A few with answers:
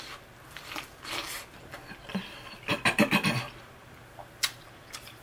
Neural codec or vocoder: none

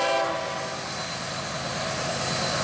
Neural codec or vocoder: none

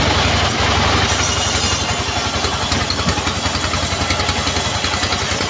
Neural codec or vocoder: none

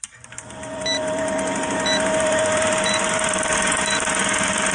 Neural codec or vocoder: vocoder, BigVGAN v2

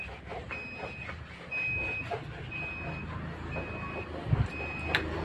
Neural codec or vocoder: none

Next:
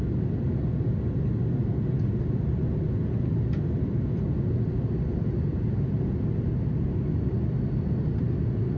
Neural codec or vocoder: none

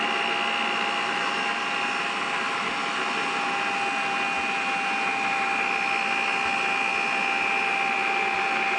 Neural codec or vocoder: none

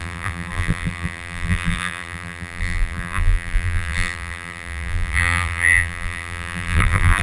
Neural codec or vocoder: vocoder, BigVGAN v2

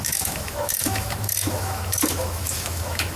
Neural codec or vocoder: autoencoder, DAC-VAE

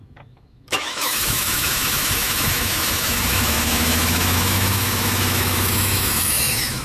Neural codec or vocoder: autoencoder, DAC-VAE